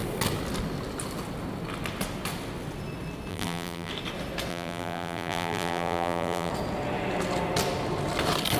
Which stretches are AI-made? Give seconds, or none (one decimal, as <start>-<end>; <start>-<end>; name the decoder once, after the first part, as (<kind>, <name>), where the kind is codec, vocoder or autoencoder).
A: 3.3-3.9 (vocoder, BigVGAN v2); 4.5-6.5

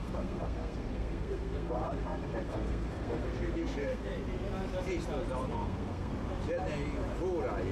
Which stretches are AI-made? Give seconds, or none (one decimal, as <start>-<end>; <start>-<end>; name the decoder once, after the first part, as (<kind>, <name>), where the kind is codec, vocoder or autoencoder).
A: 0.0-4.1 (codec, SNAC); 5.4-6.1

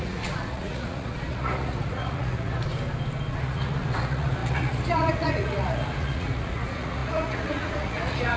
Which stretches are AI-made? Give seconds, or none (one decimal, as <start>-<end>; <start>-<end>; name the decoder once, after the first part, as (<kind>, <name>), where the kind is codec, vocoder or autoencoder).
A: 0.0-2.7 (vocoder, Vocos); 3.3-8.4

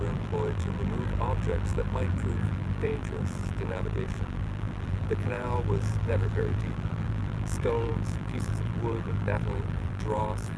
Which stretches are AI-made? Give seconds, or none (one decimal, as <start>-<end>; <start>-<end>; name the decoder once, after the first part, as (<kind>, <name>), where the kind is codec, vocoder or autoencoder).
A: 0.0-10.6 (vocoder, BigVGAN v2)

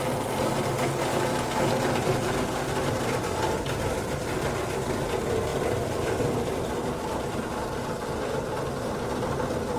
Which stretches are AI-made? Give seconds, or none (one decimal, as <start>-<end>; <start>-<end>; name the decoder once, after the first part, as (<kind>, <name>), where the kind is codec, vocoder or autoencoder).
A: none

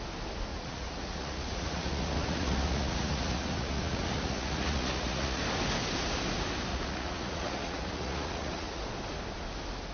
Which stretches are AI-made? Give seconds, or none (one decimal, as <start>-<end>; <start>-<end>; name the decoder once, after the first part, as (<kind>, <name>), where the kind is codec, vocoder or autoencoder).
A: 0.5-5.4 (vocoder, Vocos); 6.7-8.8